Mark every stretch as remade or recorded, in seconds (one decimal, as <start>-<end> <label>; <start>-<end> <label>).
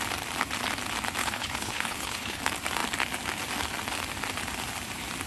0.0-1.2 recorded; 1.2-2.4 remade; 2.4-5.3 recorded